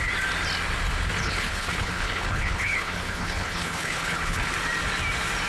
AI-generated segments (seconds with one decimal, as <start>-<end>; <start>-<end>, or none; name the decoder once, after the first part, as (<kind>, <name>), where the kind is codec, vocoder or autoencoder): 1.2-4.5 (codec, HILCodec)